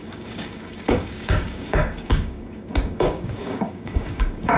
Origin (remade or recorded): remade